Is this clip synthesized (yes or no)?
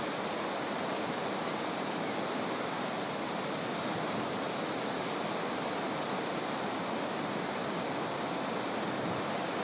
no